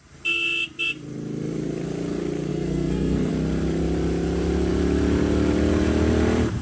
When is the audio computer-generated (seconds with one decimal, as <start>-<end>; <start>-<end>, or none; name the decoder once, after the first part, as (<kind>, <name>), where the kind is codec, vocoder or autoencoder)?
2.5-3.3 (codec, SNAC)